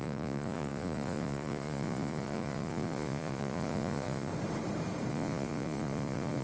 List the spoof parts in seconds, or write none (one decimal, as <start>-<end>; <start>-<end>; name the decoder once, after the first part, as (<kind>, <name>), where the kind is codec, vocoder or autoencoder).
0.0-4.3 (vocoder, Vocos); 5.1-6.4